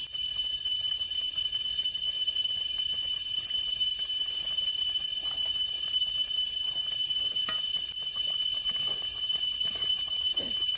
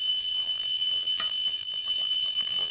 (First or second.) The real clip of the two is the first